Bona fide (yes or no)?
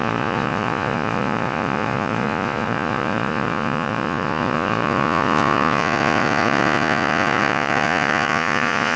no